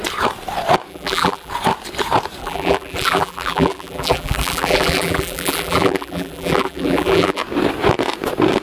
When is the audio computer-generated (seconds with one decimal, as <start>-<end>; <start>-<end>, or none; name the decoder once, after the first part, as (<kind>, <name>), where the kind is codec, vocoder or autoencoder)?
0.9-1.5 (vocoder, BigVGAN v2); 2.4-7.4

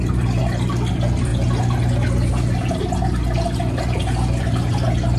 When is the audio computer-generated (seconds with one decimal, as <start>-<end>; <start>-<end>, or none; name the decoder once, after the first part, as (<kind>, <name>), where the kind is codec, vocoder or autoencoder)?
0.0-0.4 (vocoder, BigVGAN v2); 0.9-1.3; 4.4-5.2

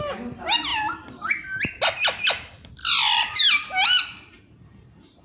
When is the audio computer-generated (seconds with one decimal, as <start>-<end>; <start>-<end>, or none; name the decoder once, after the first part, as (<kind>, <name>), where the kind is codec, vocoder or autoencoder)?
0.7-1.3 (vocoder, BigVGAN v2); 2.8-5.2

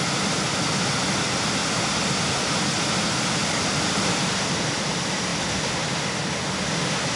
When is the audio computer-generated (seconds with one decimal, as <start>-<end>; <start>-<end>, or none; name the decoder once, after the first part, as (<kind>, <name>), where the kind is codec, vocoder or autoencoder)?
3.4-4.2 (vocoder, BigVGAN v2)

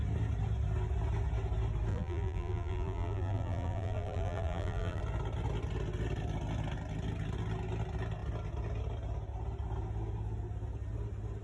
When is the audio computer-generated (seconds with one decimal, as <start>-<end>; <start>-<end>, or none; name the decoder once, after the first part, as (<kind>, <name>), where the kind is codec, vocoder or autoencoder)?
1.9-5.0 (vocoder, BigVGAN v2)

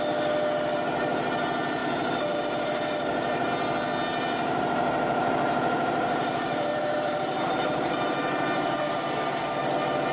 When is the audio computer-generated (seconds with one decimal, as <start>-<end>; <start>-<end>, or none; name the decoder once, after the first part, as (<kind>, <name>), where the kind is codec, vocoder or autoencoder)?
1.8-3.5 (vocoder, BigVGAN v2); 4.1-9.0

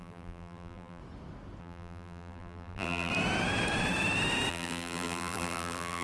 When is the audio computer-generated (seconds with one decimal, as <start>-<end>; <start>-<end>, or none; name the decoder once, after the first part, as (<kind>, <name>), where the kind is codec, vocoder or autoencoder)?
0.0-1.0 (vocoder, BigVGAN v2); 1.6-3.1; 4.5-6.0

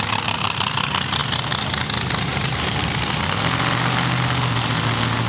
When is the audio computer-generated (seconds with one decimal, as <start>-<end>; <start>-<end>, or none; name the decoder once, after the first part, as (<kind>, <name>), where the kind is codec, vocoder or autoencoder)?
2.3-2.9 (vocoder, BigVGAN v2)